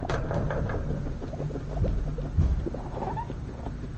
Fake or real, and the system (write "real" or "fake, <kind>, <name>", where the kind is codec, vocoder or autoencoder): real